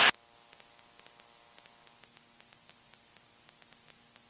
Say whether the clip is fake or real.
real